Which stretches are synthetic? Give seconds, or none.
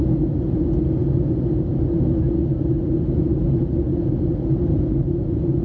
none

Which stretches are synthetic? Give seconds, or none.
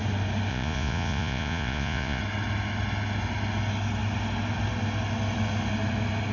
0.5-2.2 (vocoder, Vocos)